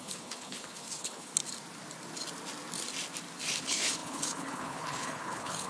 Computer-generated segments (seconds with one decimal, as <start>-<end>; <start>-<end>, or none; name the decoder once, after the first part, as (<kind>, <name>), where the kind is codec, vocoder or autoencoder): 0.0-1.3 (codec, HILCodec); 3.6-5.7